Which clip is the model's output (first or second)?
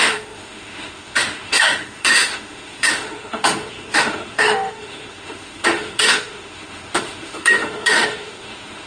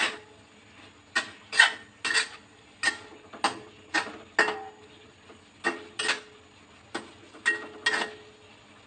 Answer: first